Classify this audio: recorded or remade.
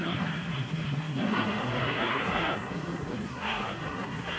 remade